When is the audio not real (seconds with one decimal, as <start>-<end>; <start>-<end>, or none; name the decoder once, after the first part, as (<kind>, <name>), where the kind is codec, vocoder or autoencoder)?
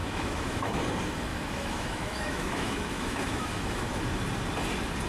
0.0-0.8 (autoencoder, DAC-VAE); 1.3-3.9